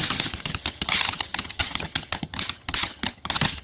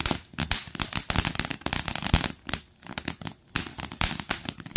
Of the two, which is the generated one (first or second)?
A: first